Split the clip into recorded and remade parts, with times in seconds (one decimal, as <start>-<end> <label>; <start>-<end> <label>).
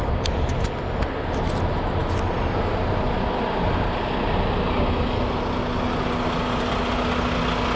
0.0-0.8 remade; 0.8-7.8 recorded